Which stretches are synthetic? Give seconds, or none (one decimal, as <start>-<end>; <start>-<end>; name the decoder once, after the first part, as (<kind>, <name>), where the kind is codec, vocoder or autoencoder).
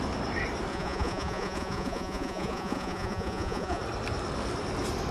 0.7-3.8 (vocoder, Vocos)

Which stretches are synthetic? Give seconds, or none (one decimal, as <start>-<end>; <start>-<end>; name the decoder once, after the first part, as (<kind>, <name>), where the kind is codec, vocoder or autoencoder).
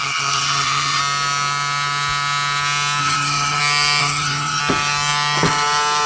0.0-1.0 (vocoder, HiFi-GAN); 3.0-3.6; 4.0-4.6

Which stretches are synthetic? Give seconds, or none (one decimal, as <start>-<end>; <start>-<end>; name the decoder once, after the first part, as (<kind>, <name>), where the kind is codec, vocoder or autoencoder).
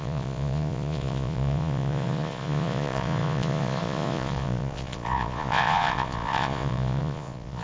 0.0-7.6 (vocoder, Vocos)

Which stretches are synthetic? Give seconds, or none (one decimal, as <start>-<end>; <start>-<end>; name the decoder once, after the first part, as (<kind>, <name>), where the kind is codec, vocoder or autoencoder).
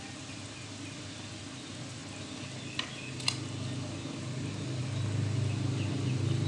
none